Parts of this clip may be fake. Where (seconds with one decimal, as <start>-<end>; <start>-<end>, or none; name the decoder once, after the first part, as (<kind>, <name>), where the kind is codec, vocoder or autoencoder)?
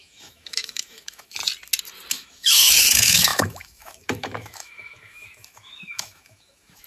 0.0-1.4 (autoencoder, DAC-VAE); 2.1-6.9